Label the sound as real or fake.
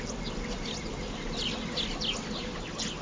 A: real